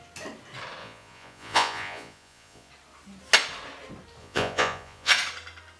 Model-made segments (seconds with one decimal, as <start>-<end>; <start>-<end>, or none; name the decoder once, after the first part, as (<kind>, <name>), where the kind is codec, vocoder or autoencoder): 0.8-2.7 (vocoder, Vocos); 4.2-5.1